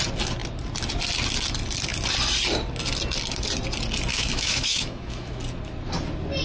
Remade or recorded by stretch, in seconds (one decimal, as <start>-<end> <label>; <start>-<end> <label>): 0.0-4.1 recorded; 4.1-5.4 remade; 5.4-6.4 recorded